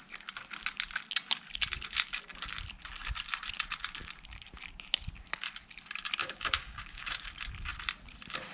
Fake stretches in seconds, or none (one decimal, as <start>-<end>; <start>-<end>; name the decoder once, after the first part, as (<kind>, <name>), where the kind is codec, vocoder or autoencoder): 6.2-7.3 (codec, DAC)

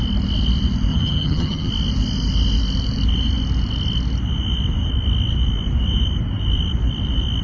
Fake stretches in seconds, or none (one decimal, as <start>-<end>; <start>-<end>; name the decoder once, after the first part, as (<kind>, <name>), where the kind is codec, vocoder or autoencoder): 0.9-1.7 (vocoder, HiFi-GAN)

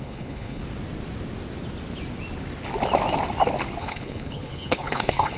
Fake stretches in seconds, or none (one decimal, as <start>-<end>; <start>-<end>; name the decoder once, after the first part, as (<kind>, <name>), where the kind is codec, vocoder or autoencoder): 0.0-0.6 (codec, HILCodec); 3.8-5.4